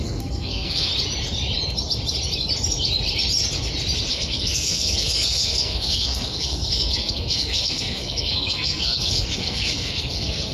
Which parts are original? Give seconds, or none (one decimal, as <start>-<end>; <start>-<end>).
0.9-4.1